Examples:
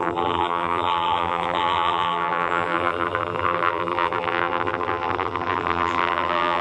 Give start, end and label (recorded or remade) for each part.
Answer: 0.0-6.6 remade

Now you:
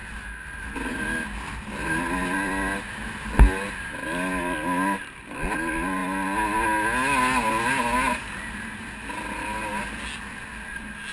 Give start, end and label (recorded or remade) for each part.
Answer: 0.0-11.1 recorded